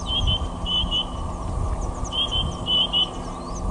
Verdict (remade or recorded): recorded